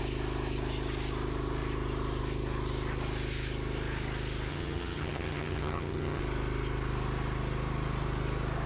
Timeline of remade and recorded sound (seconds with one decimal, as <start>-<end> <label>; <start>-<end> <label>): 0.0-4.5 recorded; 4.5-6.2 remade; 6.2-8.7 recorded